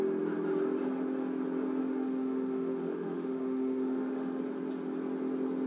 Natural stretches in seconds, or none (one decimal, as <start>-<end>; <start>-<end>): 0.0-1.8; 4.4-5.7